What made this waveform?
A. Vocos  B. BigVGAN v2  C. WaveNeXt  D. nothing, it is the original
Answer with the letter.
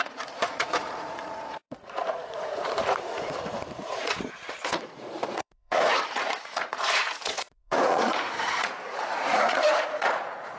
A